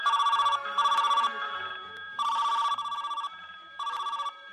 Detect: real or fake fake